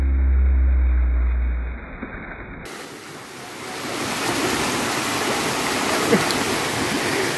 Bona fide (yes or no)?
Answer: yes